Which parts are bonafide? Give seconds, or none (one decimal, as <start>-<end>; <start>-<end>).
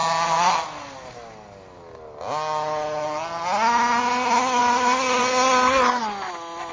0.0-6.7